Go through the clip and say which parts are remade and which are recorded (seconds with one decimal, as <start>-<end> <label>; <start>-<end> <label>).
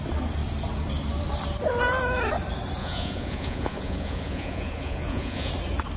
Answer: 0.0-2.8 recorded; 2.8-5.5 remade; 5.5-6.0 recorded